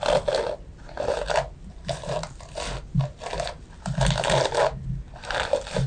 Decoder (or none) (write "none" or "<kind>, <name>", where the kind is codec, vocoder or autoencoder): none